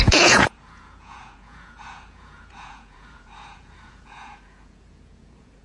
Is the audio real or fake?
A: fake